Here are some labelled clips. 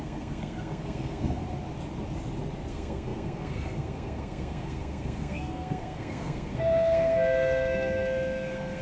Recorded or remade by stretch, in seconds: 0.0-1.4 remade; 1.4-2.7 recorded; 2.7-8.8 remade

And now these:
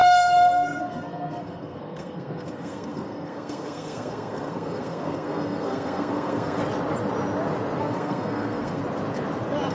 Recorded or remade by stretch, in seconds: 0.0-6.6 remade; 6.6-7.8 recorded; 7.8-8.8 remade; 8.8-9.7 recorded

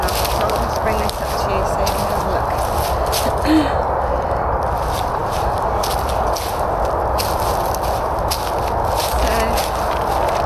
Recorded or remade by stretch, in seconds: 0.0-10.5 recorded